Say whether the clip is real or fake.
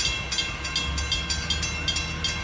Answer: real